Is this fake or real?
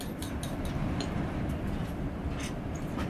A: fake